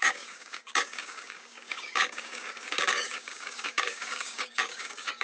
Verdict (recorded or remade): remade